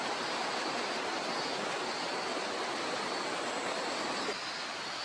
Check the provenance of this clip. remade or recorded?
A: recorded